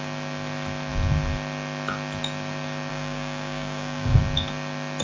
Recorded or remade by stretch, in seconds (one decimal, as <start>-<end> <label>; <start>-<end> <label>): 0.0-2.9 recorded; 2.9-4.2 remade; 4.2-5.0 recorded